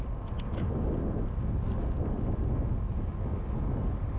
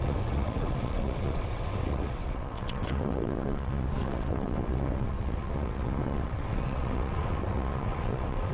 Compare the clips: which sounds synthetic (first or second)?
second